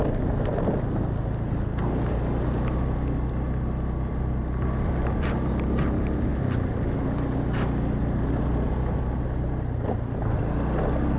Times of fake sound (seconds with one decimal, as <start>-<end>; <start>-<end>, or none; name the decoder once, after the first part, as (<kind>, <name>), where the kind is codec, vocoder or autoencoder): none